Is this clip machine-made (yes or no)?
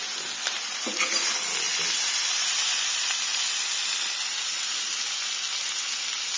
no